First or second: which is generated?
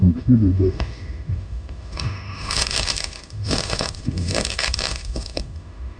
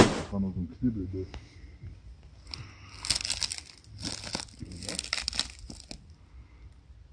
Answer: first